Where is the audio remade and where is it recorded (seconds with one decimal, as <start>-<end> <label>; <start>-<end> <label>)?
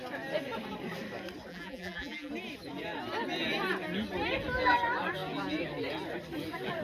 0.0-1.5 recorded; 1.5-2.3 remade; 2.3-6.8 recorded